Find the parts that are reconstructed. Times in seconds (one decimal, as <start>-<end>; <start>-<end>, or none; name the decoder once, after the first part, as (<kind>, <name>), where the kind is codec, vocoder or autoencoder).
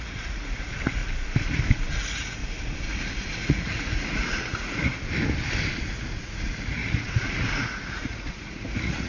0.0-1.0 (vocoder, Vocos); 1.9-2.4; 2.9-4.9; 5.9-9.1